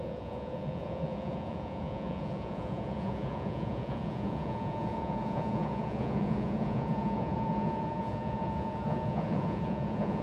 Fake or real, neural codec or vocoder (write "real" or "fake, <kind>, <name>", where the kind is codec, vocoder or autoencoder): fake, vocoder, Vocos